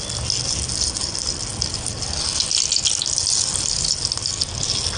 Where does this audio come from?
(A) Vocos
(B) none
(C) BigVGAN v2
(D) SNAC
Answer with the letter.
B